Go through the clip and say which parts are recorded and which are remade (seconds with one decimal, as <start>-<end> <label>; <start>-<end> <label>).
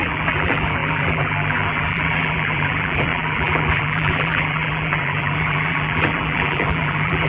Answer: 0.0-7.3 remade